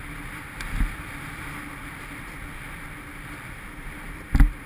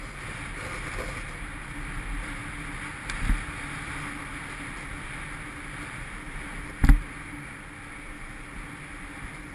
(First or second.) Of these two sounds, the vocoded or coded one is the first